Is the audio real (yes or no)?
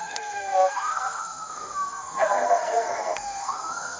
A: no